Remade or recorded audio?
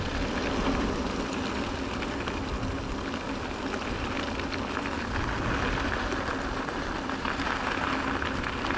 recorded